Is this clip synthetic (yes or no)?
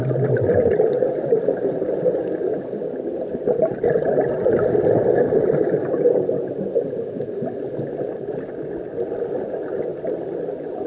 no